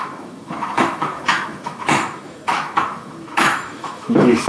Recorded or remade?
remade